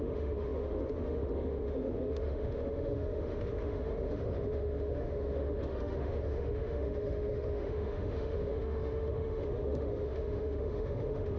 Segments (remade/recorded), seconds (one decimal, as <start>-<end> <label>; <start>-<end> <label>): 0.0-11.4 remade